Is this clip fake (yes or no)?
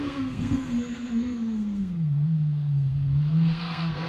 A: yes